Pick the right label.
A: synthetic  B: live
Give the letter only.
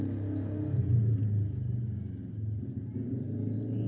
B